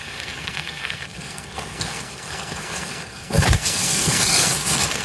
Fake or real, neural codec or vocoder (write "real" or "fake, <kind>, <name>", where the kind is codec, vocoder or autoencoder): fake, codec, SNAC